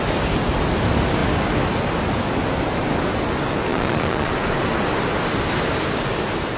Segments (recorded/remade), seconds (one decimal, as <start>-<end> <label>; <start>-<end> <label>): 0.0-3.7 recorded; 3.7-4.3 remade; 4.3-6.6 recorded